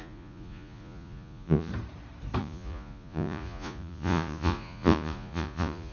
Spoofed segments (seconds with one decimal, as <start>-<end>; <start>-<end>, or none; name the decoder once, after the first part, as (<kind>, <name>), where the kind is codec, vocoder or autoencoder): 0.0-1.7 (vocoder, Vocos); 2.4-5.9